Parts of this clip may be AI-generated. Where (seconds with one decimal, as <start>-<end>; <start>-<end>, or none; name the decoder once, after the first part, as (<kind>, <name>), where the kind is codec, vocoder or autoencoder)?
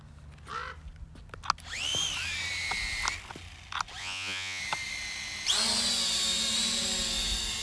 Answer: 4.0-4.6 (vocoder, Vocos)